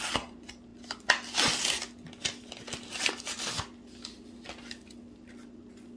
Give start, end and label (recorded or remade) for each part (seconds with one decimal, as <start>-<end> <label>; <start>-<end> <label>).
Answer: 0.0-6.0 recorded